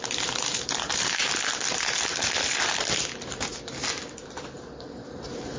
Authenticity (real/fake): real